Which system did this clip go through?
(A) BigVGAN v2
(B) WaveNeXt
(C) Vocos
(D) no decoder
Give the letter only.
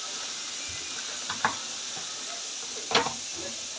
D